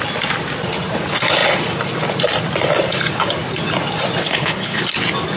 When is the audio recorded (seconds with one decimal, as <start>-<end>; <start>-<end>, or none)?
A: 0.0-4.2; 4.8-5.4